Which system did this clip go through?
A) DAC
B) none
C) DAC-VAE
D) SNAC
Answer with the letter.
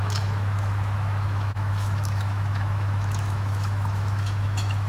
C